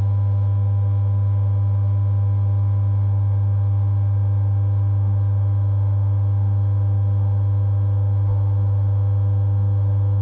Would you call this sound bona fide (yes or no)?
no